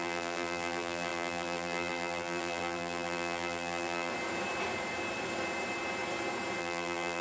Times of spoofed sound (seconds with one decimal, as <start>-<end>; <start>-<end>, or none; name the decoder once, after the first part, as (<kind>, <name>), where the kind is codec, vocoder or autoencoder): 0.0-4.1 (vocoder, BigVGAN v2); 6.6-7.2